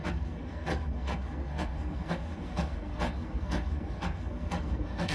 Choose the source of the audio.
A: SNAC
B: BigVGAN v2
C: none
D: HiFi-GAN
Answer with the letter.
A